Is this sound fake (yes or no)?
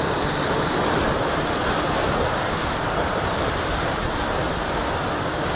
yes